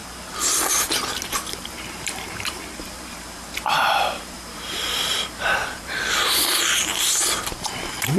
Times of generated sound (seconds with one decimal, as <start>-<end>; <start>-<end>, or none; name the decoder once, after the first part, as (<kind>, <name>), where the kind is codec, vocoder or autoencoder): 1.3-8.2 (vocoder, BigVGAN v2)